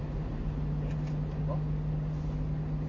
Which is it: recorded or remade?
recorded